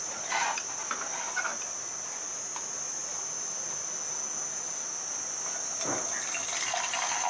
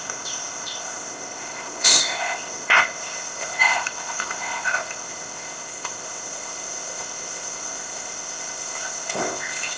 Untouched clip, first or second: first